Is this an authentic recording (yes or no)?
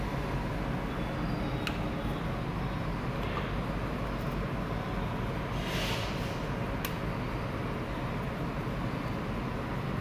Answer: yes